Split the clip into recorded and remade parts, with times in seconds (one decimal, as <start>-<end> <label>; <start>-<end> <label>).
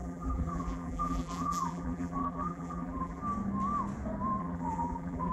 0.0-3.2 remade; 3.2-4.4 recorded; 4.4-5.3 remade